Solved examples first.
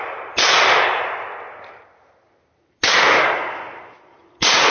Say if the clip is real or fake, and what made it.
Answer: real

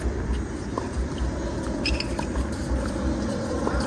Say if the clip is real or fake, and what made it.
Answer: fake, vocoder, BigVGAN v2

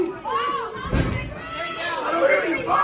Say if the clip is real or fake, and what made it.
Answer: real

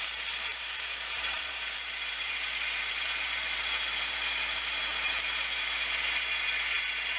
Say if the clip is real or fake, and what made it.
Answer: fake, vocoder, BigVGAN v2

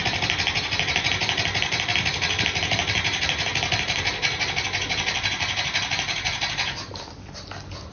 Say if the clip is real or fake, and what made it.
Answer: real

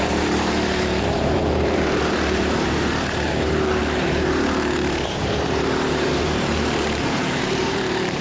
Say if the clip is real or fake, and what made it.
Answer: fake, vocoder, BigVGAN v2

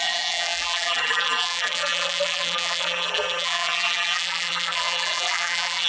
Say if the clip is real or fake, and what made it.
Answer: fake, vocoder, BigVGAN v2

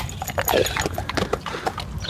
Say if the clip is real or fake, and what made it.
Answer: real